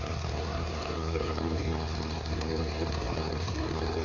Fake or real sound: fake